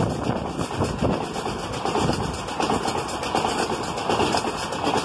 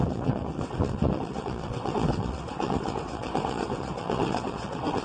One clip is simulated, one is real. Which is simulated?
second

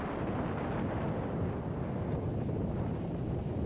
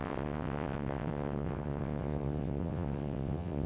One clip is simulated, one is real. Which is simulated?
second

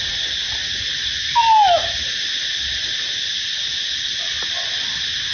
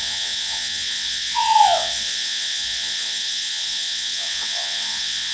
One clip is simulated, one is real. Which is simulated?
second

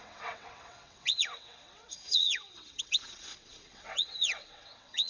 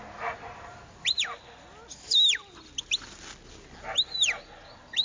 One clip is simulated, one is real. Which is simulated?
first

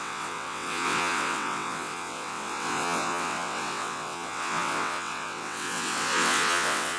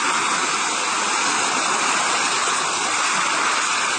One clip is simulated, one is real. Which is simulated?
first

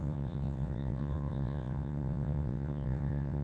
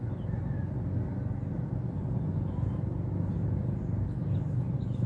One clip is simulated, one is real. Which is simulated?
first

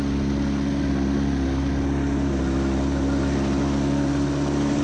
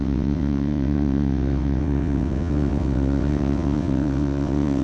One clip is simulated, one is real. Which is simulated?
second